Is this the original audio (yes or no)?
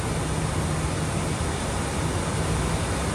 yes